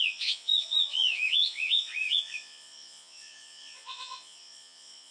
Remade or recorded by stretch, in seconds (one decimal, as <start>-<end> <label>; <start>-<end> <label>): 0.0-5.1 remade